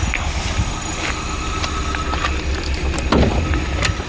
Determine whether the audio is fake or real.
real